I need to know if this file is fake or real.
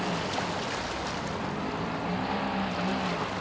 real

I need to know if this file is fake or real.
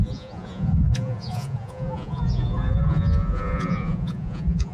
fake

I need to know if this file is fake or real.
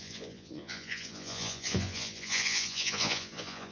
fake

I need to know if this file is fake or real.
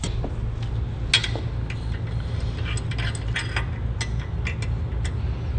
real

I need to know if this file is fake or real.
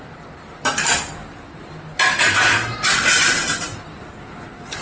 real